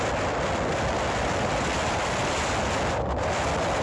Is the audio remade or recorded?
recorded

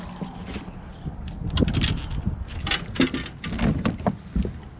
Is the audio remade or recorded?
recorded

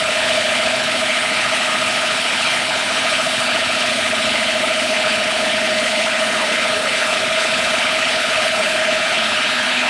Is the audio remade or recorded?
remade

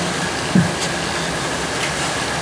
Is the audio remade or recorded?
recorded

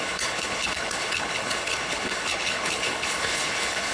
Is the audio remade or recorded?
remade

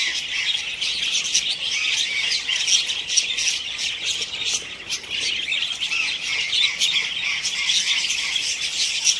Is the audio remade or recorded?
recorded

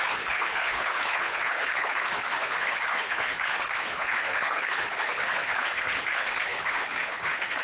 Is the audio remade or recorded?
remade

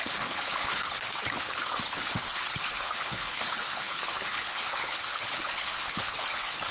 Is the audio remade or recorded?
remade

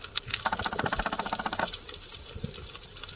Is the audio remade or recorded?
recorded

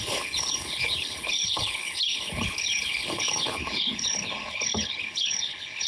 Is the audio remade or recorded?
remade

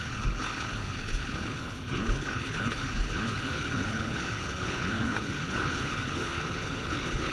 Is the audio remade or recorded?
remade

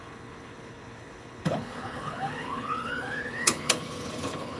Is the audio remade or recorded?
remade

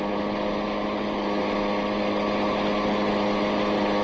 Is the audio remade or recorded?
recorded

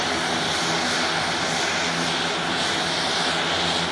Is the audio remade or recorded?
recorded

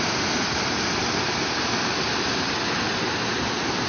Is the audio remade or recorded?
recorded